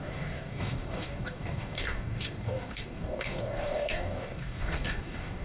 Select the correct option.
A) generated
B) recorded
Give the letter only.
A